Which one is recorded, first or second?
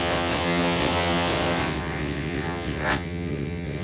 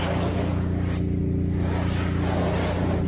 second